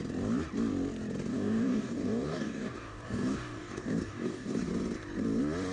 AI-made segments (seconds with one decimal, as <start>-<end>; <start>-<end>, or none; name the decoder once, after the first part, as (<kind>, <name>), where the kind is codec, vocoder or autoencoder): 1.3-4.7 (codec, DAC)